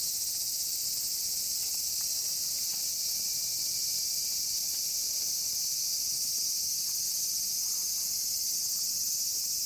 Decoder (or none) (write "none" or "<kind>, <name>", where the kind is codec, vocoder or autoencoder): none